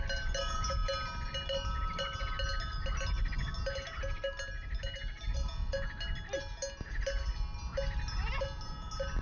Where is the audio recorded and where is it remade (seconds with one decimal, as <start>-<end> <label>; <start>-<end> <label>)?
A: 0.0-9.2 recorded